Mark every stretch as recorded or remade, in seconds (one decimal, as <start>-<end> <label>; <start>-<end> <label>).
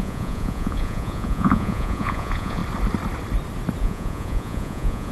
0.0-2.6 remade; 2.6-3.8 recorded; 3.8-5.1 remade